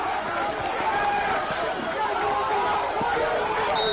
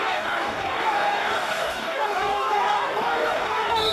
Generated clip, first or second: second